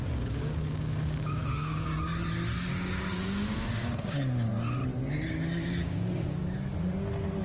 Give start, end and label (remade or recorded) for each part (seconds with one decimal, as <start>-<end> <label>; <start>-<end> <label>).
0.0-1.9 remade; 1.9-2.7 recorded; 2.7-4.5 remade; 4.5-5.3 recorded; 5.3-6.4 remade; 6.4-7.4 recorded